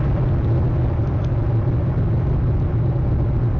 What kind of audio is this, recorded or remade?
recorded